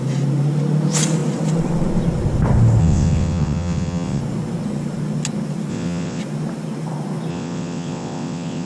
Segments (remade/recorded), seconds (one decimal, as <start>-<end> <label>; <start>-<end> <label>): 0.0-2.8 recorded; 2.8-4.2 remade; 4.2-5.7 recorded; 5.7-6.2 remade; 6.2-7.3 recorded; 7.3-8.7 remade